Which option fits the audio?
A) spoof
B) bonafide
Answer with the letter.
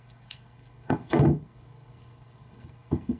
A